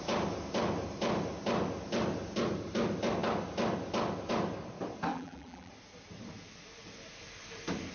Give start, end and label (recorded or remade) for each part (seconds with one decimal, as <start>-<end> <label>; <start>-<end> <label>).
0.0-5.1 recorded; 5.1-5.7 remade; 5.7-7.9 recorded